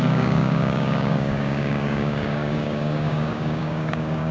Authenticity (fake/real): fake